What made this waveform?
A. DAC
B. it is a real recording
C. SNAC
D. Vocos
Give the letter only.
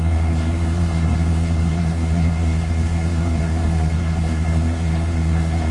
C